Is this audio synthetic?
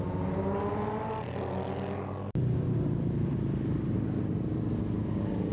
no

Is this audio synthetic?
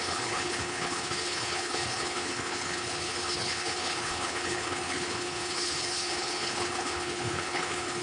yes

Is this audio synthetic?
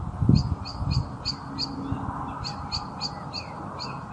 no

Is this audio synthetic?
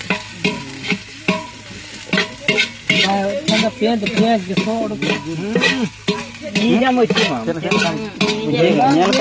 no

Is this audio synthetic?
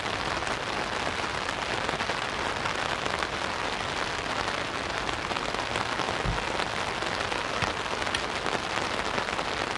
no